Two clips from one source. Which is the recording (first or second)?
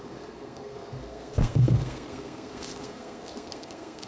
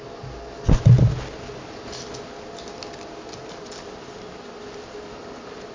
second